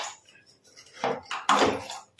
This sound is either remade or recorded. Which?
recorded